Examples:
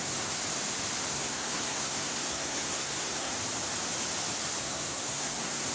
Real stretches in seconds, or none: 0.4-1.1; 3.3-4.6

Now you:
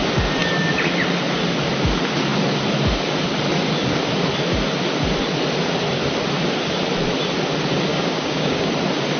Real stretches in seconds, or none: 0.0-7.9; 8.7-9.2

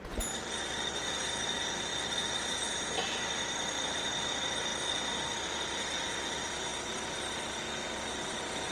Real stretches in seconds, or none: 0.0-6.7; 7.4-8.7

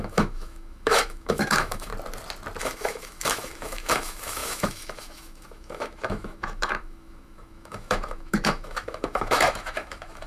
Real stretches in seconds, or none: 1.9-2.6

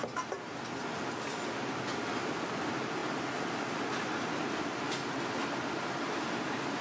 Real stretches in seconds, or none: 0.0-6.8

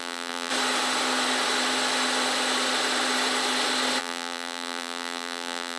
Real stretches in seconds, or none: 0.5-4.0